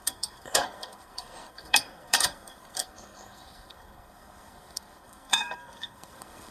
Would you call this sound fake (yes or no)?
yes